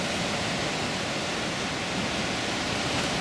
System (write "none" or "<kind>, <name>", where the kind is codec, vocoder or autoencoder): none